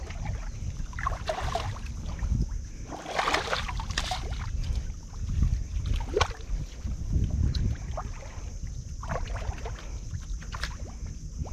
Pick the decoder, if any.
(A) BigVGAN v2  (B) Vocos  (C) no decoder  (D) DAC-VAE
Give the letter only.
C